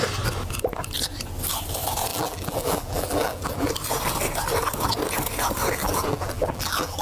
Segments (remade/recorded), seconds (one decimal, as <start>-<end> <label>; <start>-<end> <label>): 0.0-2.1 recorded; 2.1-3.7 remade; 3.7-5.8 recorded; 5.8-7.0 remade